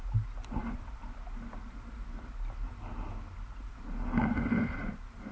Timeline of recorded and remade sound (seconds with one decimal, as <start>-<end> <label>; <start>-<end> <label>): 0.0-5.3 recorded